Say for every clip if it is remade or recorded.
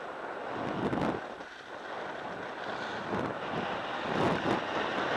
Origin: recorded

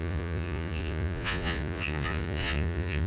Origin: remade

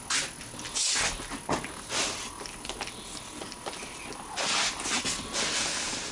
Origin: recorded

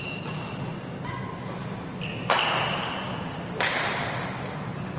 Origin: recorded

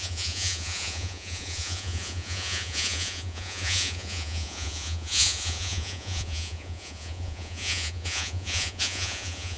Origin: remade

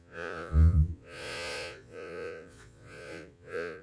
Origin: remade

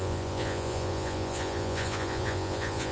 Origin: remade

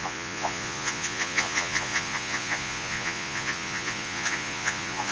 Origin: remade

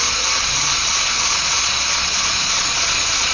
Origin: remade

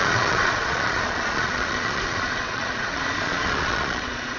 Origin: remade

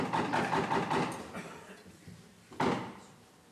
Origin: recorded